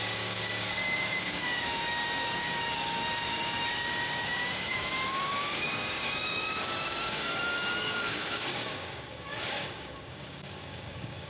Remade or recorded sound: remade